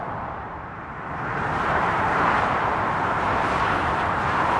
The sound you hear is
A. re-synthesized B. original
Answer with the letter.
A